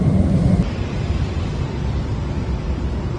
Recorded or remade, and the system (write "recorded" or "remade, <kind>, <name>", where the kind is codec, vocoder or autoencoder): recorded